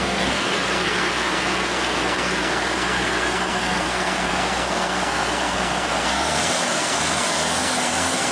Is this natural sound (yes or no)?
no